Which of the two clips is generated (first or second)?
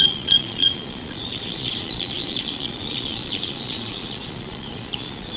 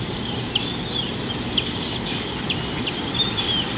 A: first